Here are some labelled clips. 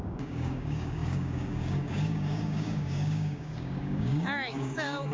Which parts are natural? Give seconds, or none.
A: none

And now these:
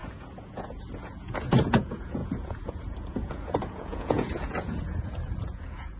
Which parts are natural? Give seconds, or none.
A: none

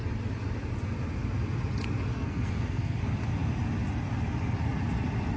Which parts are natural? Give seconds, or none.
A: 0.0-2.1; 3.0-5.4

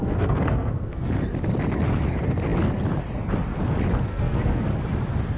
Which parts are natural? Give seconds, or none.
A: 1.1-4.1; 4.7-5.4

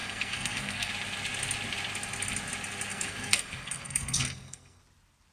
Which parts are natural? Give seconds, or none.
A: 0.9-2.9; 4.8-5.3